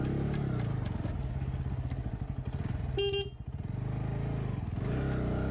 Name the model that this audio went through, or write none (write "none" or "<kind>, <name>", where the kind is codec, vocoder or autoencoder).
none